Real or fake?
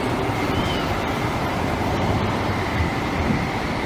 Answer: fake